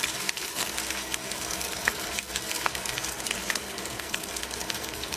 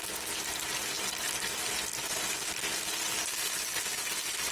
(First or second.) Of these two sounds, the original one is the second